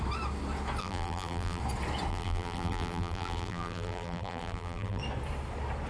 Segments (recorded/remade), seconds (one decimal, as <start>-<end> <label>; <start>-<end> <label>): 0.0-0.8 recorded; 0.8-1.6 remade; 1.6-2.1 recorded; 2.1-5.0 remade; 5.0-5.9 recorded